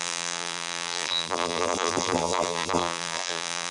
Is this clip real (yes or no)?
no